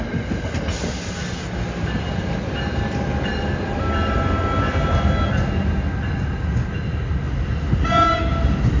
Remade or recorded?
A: recorded